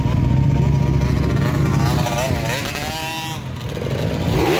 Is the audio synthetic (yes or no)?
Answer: no